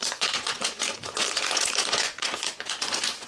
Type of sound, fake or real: fake